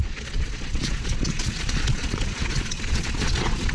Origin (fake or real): fake